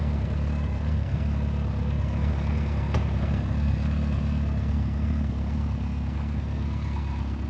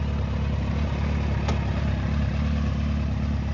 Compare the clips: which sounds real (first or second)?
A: second